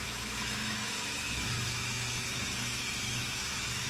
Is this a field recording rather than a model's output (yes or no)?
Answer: no